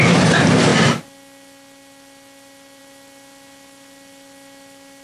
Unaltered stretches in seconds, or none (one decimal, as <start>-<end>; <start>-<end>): 0.0-5.0

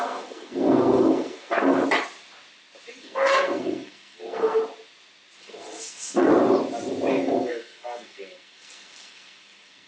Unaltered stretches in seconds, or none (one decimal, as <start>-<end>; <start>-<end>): 1.8-2.9; 4.6-5.4; 6.3-7.1

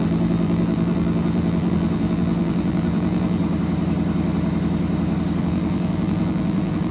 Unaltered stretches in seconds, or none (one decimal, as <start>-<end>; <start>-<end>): 3.4-5.4

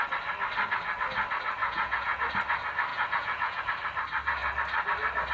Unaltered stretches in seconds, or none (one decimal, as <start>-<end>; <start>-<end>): 0.0-1.6; 2.3-2.9; 3.6-5.3

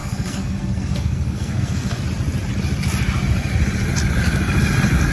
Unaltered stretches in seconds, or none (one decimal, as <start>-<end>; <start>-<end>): 2.0-5.1

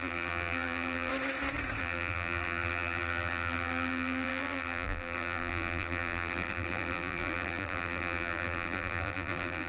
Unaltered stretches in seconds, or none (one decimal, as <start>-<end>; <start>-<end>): 1.1-1.8

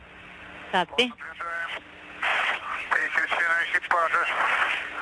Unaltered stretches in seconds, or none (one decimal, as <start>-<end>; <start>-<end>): 0.0-2.3; 3.4-5.0